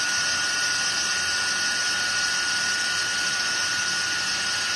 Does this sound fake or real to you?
real